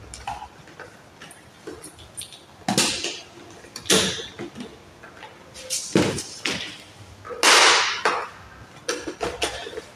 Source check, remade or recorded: recorded